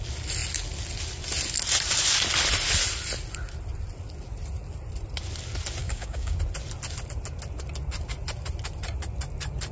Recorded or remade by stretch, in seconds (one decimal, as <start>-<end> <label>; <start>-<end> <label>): 0.0-5.8 recorded; 5.8-6.4 remade; 6.4-9.7 recorded